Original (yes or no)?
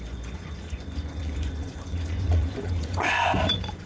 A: no